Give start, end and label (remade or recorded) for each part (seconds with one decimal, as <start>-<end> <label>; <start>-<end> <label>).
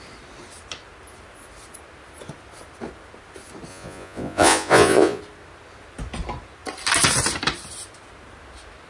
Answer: 0.0-3.7 recorded; 3.7-5.2 remade; 5.2-8.9 recorded